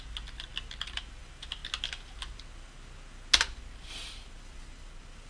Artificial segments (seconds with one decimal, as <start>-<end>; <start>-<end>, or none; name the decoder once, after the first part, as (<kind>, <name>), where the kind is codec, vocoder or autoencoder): none